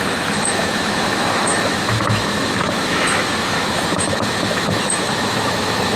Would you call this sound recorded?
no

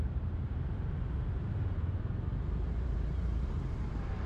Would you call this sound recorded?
no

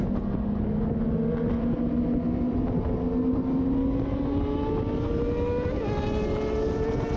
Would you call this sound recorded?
yes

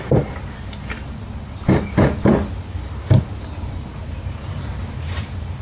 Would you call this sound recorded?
no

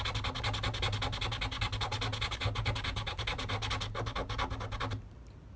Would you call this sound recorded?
yes